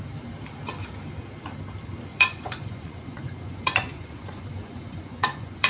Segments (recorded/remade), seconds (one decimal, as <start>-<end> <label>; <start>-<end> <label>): 0.0-2.1 recorded; 2.1-5.7 remade